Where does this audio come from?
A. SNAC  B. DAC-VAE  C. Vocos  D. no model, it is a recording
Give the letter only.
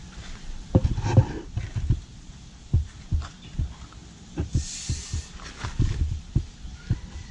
D